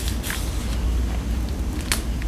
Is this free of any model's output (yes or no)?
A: yes